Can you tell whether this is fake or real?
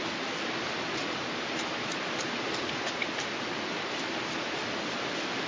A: real